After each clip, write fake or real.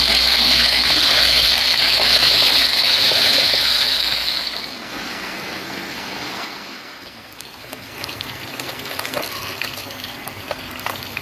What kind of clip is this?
fake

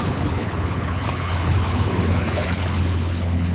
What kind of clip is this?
fake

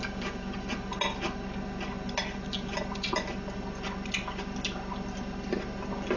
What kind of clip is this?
real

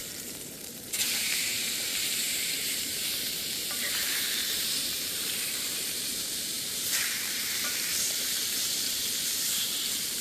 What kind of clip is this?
fake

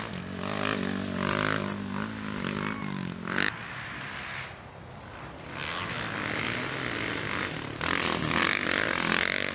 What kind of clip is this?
real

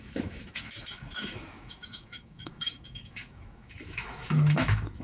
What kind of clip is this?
fake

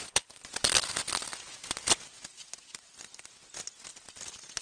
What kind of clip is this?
real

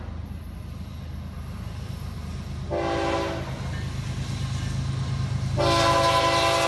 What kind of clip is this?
real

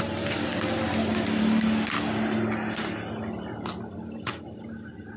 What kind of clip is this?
real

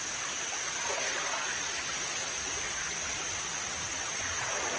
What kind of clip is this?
real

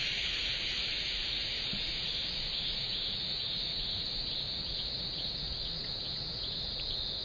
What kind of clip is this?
fake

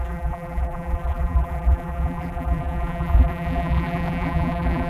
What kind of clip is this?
fake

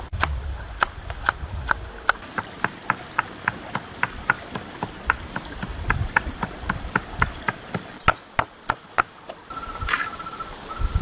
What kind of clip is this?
fake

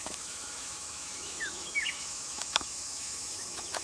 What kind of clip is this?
fake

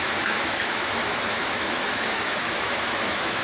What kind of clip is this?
fake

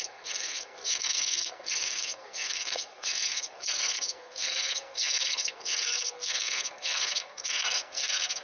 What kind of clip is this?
fake